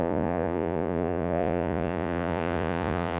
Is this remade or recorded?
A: remade